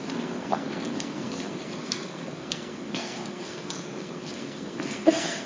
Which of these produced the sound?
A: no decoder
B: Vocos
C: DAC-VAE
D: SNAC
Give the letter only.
D